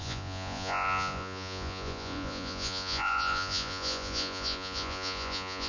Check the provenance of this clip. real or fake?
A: fake